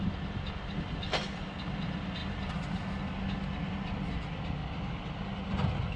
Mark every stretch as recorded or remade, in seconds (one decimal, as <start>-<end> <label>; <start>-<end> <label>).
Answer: 0.0-6.0 recorded